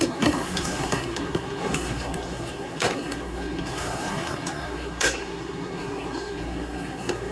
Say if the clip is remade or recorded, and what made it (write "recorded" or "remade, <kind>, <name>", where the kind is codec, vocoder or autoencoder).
remade, codec, SNAC